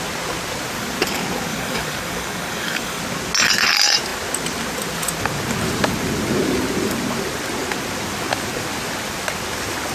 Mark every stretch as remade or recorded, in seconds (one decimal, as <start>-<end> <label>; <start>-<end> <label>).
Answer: 0.0-1.5 recorded; 1.5-3.0 remade; 3.0-9.9 recorded